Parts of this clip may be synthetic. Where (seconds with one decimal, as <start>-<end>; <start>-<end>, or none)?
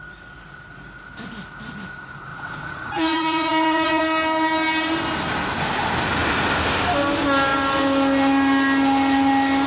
2.3-4.0